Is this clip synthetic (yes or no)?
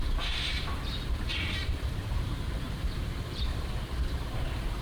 yes